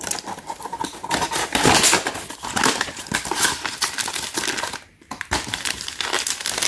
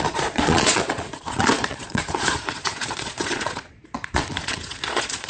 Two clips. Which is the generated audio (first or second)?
second